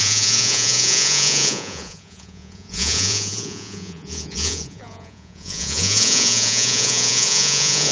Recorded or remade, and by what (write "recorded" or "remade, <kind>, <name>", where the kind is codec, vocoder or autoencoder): remade, vocoder, Vocos